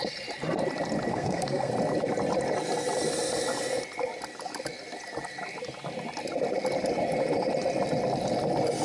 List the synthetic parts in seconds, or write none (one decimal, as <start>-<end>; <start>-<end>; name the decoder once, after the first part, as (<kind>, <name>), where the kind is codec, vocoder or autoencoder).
1.1-1.7 (codec, SNAC)